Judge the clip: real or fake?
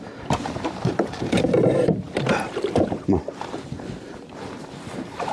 fake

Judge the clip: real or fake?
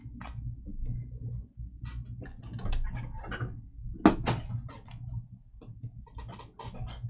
real